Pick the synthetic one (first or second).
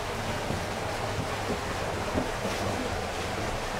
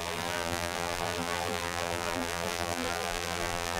second